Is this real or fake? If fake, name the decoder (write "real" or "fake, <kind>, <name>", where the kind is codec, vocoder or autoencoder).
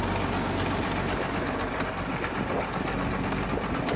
real